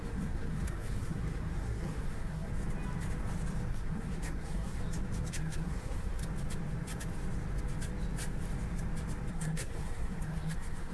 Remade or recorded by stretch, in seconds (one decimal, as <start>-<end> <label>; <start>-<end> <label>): 0.0-2.5 remade; 2.5-3.7 recorded; 3.7-4.8 remade; 4.8-5.3 recorded; 5.3-6.2 remade; 6.2-9.3 recorded; 9.3-10.9 remade